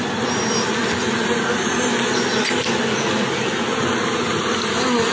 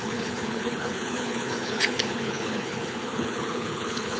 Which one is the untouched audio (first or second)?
first